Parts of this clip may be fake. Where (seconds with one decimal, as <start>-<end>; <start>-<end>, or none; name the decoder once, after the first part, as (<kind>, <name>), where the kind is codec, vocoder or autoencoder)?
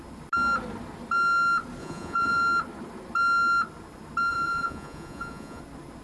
1.8-2.4 (vocoder, Vocos); 4.3-5.6